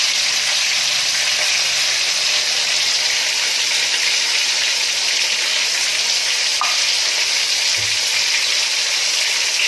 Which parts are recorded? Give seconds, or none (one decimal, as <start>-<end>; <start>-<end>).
0.0-9.7